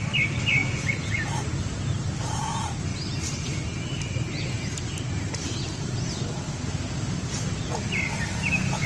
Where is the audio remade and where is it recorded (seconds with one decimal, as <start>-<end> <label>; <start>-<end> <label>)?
0.0-0.6 recorded; 0.6-1.3 remade; 1.3-8.9 recorded